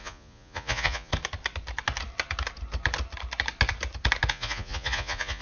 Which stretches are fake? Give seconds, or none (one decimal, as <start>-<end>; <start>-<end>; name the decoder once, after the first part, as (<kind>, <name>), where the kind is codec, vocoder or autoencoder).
0.0-1.1 (vocoder, Vocos); 4.3-5.4

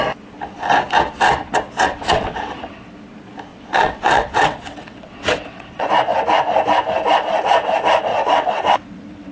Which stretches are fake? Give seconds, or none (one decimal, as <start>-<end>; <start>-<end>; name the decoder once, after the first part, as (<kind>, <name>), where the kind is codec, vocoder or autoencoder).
1.4-2.9 (vocoder, WaveNeXt); 3.5-5.9; 8.1-9.3

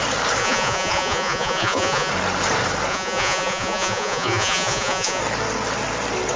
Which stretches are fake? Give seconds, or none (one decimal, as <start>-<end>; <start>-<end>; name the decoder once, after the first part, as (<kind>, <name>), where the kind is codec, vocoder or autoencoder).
0.4-2.1 (vocoder, Vocos); 2.9-5.2

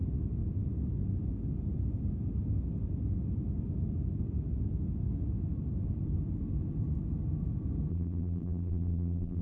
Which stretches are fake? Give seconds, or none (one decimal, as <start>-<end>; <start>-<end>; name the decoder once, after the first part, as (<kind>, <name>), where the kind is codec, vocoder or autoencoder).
7.9-9.4 (vocoder, BigVGAN v2)

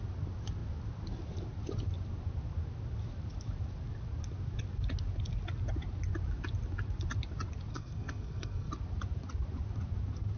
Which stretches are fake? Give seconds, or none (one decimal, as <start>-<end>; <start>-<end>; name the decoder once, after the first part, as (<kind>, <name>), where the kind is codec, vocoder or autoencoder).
7.7-8.7 (codec, SNAC)